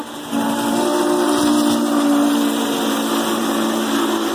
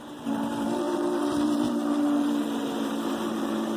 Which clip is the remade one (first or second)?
second